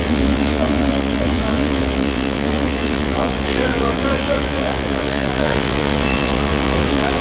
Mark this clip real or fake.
fake